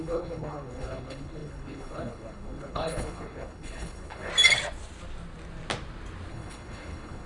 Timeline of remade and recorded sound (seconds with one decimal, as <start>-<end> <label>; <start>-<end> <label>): 0.0-4.3 remade; 4.3-6.3 recorded; 6.3-7.3 remade